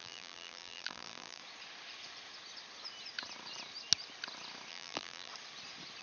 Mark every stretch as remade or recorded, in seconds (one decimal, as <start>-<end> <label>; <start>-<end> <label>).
0.0-1.4 remade; 1.4-4.7 recorded; 4.7-5.3 remade; 5.3-6.0 recorded